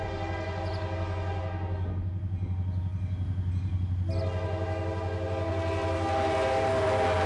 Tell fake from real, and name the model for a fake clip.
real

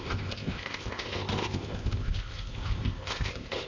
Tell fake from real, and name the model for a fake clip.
fake, codec, ZipCodec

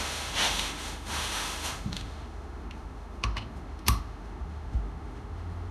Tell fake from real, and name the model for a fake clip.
fake, autoencoder, DAC-VAE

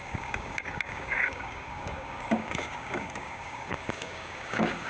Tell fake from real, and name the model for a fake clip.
fake, codec, DAC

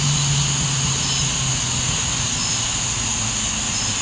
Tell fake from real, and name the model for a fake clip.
real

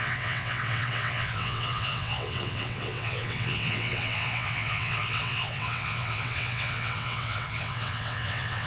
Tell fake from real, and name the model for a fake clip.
fake, vocoder, WaveNeXt